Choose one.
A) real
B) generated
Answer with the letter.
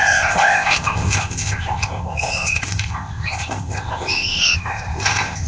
B